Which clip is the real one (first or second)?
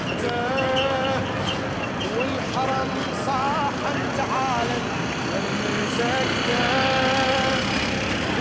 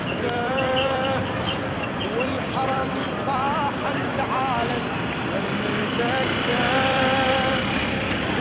first